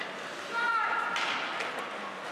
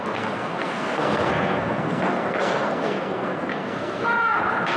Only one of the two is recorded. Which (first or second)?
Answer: first